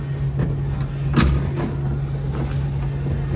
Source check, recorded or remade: recorded